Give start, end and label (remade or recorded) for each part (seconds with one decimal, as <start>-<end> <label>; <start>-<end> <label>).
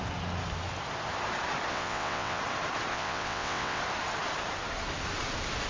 0.0-1.7 recorded; 1.7-2.4 remade; 2.4-2.9 recorded; 2.9-3.8 remade; 3.8-5.7 recorded